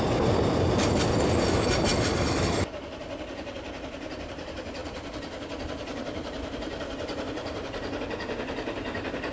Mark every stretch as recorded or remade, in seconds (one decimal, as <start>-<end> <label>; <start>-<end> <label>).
0.0-4.8 recorded; 4.8-8.0 remade; 8.0-9.3 recorded